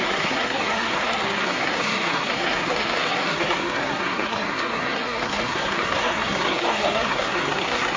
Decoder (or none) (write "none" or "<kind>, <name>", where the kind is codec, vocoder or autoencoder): codec, SNAC